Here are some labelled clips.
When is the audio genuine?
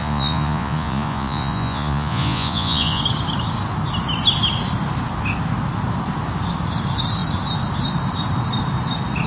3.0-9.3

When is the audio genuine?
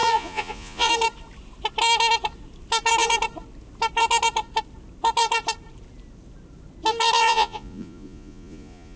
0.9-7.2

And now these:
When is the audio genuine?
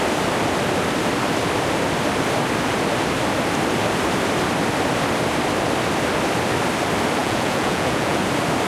0.0-7.2; 8.2-8.7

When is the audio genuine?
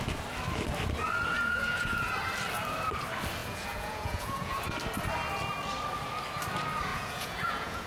0.0-1.3; 2.1-3.4; 4.6-6.9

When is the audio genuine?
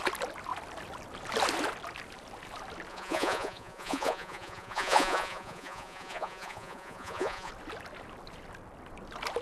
0.0-2.9; 7.5-9.4